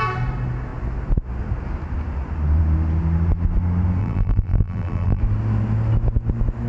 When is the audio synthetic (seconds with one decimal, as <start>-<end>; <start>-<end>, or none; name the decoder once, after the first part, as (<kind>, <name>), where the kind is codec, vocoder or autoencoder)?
4.0-5.2 (vocoder, BigVGAN v2)